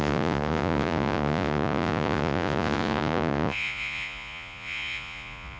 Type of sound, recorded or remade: remade